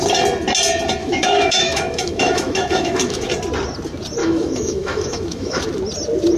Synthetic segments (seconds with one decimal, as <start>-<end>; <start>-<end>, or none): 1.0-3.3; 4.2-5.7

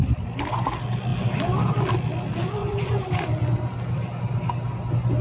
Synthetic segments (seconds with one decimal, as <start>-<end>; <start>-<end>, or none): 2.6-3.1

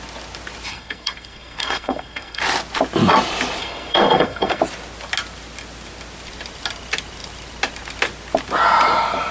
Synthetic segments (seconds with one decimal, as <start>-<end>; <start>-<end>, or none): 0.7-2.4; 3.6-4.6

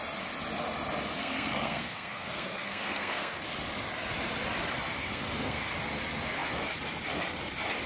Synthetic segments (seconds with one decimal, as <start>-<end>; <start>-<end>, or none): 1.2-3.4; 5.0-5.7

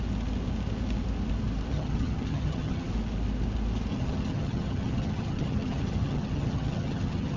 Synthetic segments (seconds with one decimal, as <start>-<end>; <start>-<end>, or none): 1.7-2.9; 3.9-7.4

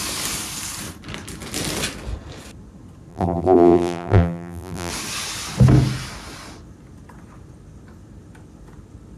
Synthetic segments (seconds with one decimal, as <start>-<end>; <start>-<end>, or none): 3.1-4.9

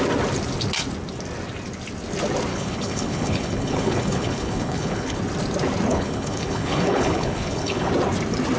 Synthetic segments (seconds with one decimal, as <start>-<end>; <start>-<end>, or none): 2.5-5.2; 5.9-7.9

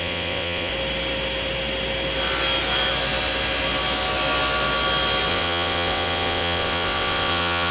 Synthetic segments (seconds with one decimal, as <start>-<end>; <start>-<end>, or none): 0.0-0.7; 5.3-7.7